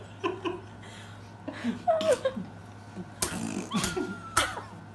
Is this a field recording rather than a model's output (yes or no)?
yes